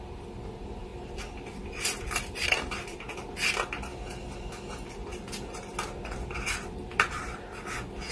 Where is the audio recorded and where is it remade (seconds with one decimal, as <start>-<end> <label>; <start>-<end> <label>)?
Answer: 0.0-0.9 recorded; 0.9-3.0 remade; 3.0-8.1 recorded